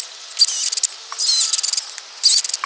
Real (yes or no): yes